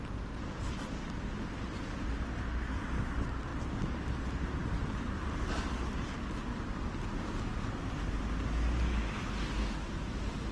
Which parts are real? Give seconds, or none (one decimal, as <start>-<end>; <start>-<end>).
0.0-10.5